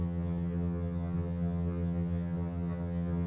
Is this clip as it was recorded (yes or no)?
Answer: no